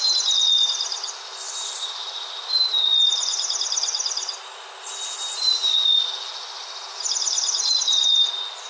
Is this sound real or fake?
real